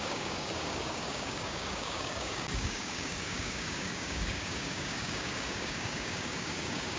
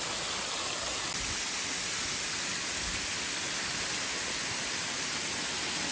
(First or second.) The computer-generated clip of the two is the first